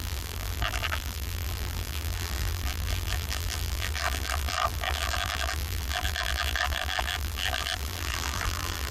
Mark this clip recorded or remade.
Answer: remade